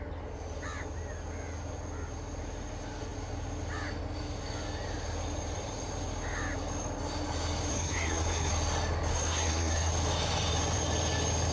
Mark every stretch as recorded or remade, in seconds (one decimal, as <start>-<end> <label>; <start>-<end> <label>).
0.0-7.7 recorded; 7.7-8.5 remade; 8.5-9.1 recorded; 9.1-9.9 remade; 9.9-11.5 recorded